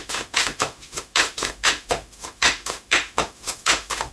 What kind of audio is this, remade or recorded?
remade